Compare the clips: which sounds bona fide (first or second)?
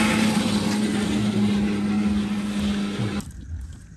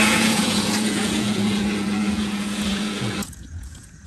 first